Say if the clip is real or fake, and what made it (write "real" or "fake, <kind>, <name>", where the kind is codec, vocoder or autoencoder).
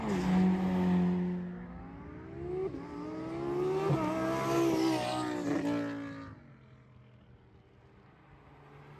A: real